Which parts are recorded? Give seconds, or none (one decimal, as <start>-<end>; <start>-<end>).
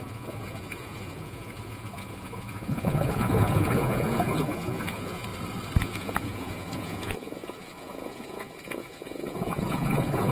5.3-5.8